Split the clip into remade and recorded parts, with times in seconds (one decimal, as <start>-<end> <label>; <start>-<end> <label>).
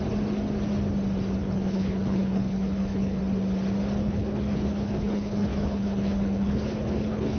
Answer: 0.0-1.4 recorded; 1.4-3.2 remade; 3.2-4.0 recorded; 4.0-7.4 remade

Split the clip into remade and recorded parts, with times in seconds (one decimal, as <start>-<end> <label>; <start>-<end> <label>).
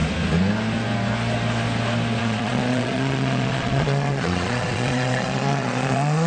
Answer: 0.0-2.2 recorded; 2.2-6.3 remade